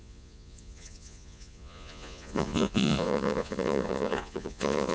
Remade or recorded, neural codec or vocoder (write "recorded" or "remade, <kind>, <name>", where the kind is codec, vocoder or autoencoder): remade, vocoder, Vocos